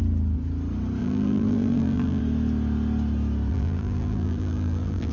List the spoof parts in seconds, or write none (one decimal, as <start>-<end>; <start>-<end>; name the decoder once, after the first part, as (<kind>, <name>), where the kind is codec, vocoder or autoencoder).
1.0-2.2 (vocoder, BigVGAN v2); 3.5-5.1